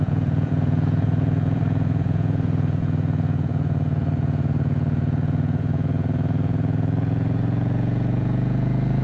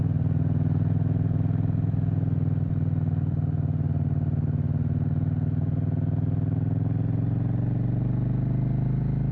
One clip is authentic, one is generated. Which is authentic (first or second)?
second